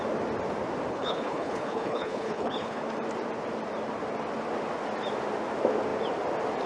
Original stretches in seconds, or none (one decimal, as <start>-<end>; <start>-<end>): 0.0-0.9; 2.8-6.7